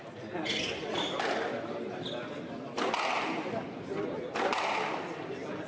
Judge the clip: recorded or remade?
recorded